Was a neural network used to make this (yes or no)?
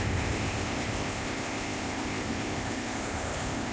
yes